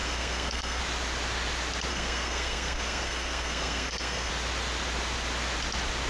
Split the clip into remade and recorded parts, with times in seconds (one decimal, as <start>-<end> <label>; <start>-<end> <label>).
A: 0.0-0.8 remade; 0.8-1.9 recorded; 1.9-4.3 remade; 4.3-6.1 recorded